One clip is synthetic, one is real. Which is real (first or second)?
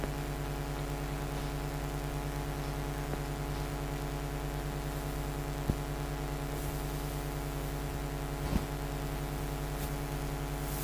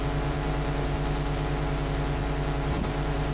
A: first